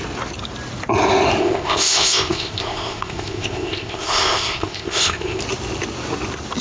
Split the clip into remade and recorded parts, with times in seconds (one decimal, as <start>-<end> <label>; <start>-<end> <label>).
0.0-1.4 recorded; 1.4-5.4 remade; 5.4-6.6 recorded